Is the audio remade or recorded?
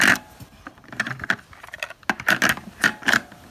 recorded